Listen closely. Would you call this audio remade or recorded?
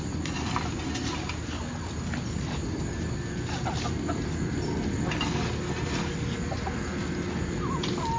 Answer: recorded